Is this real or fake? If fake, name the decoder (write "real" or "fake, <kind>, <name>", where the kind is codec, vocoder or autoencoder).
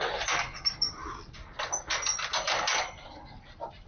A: real